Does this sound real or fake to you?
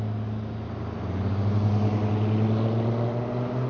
real